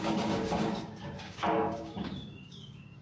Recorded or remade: remade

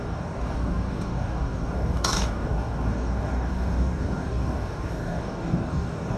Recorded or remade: remade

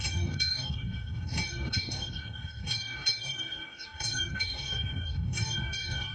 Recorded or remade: remade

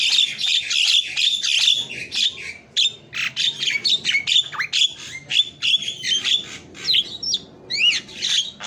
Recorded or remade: recorded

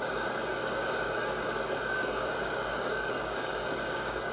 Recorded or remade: remade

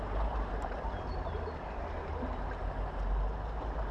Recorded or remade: recorded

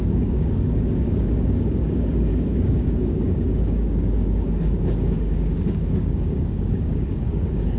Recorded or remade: remade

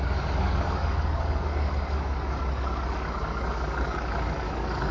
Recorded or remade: remade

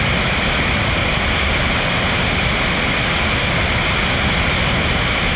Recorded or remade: recorded